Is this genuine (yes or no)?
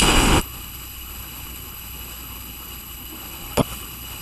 no